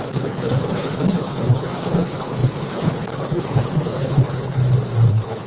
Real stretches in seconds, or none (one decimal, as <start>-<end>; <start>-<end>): 4.6-5.1